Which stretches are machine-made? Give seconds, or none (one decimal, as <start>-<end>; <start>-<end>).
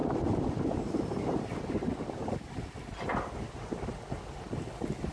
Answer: 0.0-1.9